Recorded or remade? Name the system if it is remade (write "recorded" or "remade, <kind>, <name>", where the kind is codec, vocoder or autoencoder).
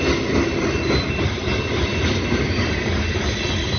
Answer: recorded